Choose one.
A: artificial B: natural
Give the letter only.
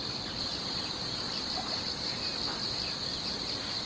B